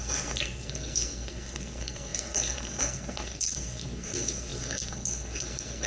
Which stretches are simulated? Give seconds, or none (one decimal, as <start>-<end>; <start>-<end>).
0.0-5.9